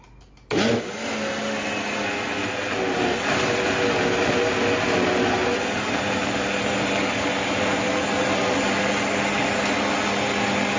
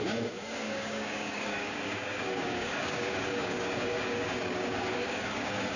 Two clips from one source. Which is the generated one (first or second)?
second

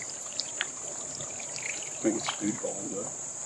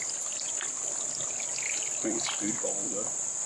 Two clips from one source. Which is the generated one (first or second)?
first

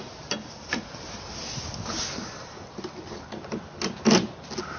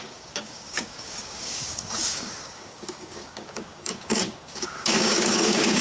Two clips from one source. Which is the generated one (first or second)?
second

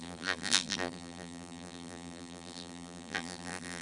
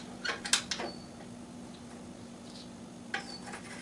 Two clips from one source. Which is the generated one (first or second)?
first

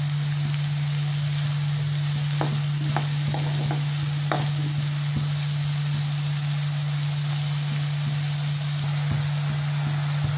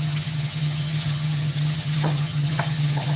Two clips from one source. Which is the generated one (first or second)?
second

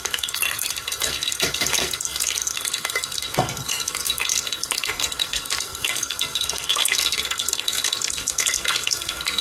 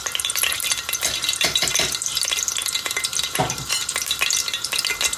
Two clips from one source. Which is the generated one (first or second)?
first